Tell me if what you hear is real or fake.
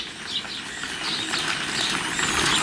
real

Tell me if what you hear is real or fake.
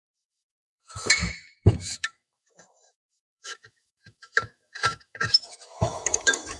fake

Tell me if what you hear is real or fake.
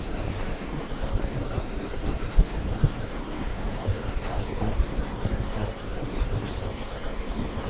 fake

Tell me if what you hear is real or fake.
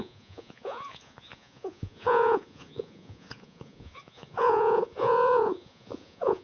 fake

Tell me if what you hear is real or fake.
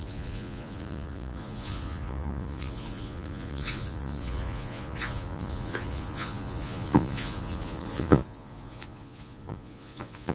fake